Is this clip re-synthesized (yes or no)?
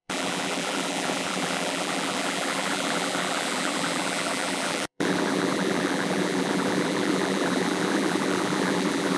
yes